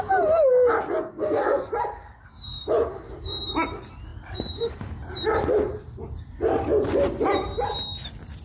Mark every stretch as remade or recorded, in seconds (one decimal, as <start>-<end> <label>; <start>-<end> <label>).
0.0-1.1 recorded; 1.1-1.7 remade; 1.7-8.4 recorded